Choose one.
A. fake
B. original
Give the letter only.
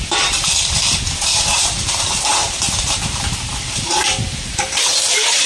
A